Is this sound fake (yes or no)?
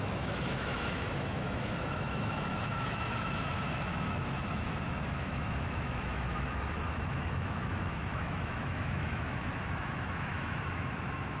yes